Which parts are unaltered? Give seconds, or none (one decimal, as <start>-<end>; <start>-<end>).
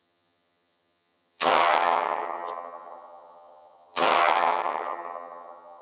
none